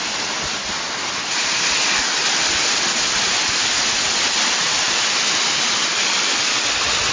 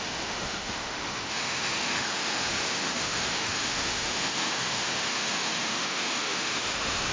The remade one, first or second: second